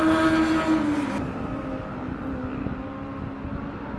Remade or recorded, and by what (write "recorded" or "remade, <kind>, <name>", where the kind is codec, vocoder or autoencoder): recorded